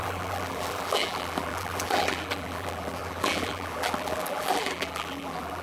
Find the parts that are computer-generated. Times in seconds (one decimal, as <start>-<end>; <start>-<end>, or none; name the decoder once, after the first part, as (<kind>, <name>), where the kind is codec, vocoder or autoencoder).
0.0-5.6 (vocoder, BigVGAN v2)